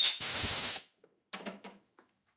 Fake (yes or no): yes